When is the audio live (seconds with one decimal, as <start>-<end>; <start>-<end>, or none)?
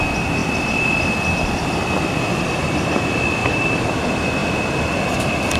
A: 0.0-0.4; 1.4-3.4; 3.9-5.6